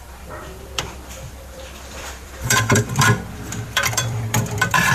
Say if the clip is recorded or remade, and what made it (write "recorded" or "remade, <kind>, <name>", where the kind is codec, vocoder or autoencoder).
remade, vocoder, BigVGAN v2